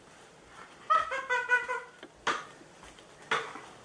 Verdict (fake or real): real